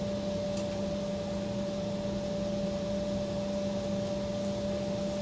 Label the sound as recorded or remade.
recorded